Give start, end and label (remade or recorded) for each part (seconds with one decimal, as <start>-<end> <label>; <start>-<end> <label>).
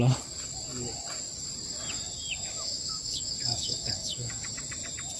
0.0-2.4 recorded; 2.4-4.5 remade; 4.5-5.2 recorded